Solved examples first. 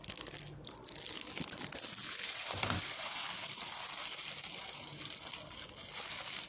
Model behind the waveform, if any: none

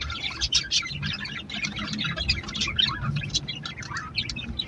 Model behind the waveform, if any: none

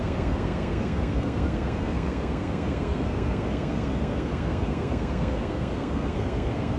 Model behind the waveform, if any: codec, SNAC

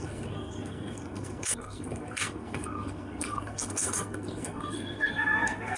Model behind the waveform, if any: codec, SNAC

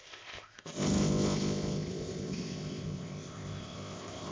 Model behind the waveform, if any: codec, ZipCodec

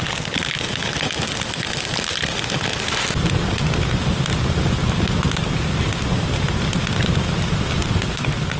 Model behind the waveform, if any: none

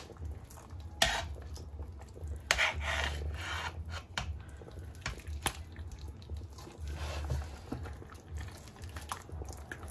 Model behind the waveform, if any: none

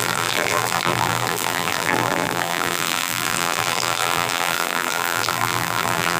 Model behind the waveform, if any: vocoder, BigVGAN v2